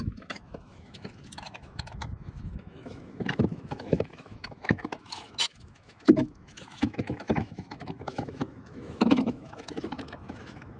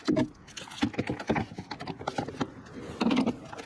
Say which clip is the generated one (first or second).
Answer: first